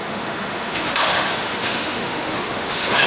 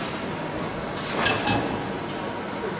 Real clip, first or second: second